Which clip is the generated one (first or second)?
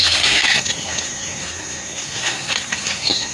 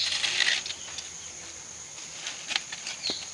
first